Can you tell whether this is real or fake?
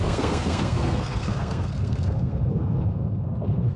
fake